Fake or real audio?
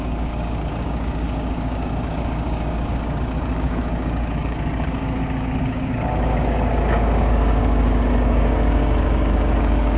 fake